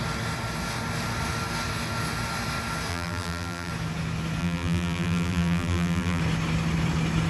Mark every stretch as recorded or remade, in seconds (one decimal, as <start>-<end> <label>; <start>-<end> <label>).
0.0-2.9 recorded; 2.9-3.7 remade; 3.7-4.4 recorded; 4.4-6.2 remade; 6.2-7.3 recorded